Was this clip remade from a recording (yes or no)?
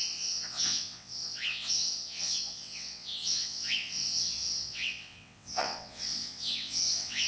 yes